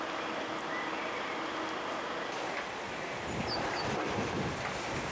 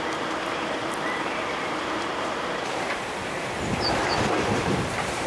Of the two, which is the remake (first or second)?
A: second